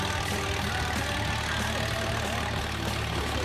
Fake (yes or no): no